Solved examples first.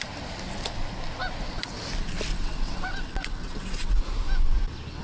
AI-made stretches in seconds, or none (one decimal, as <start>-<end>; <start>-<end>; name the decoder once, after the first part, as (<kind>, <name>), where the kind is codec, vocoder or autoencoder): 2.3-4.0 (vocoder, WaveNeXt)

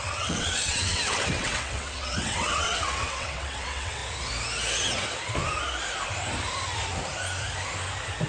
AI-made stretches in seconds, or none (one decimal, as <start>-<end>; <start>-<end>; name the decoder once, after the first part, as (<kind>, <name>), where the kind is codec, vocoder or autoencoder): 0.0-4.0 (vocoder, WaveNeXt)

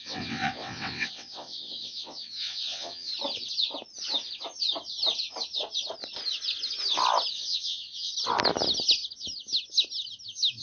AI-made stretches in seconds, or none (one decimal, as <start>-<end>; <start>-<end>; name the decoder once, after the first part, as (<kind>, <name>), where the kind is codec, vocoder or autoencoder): 0.0-3.1 (vocoder, WaveNeXt); 7.3-8.1

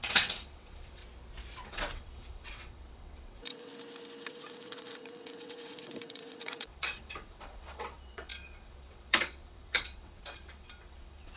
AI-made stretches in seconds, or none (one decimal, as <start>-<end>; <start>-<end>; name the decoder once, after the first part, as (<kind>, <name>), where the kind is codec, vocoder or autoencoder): 0.0-1.0 (vocoder, WaveNeXt); 1.7-3.7; 4.3-11.4

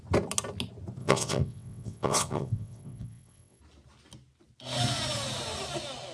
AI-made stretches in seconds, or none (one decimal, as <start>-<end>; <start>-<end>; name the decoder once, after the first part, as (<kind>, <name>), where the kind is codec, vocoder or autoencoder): 1.0-3.6 (vocoder, WaveNeXt)

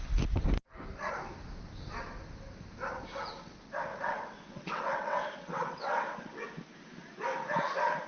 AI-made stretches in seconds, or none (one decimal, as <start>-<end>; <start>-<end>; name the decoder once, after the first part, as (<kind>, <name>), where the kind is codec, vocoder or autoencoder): 3.9-6.5 (vocoder, WaveNeXt)